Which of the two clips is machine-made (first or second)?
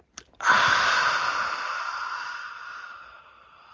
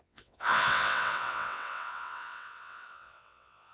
second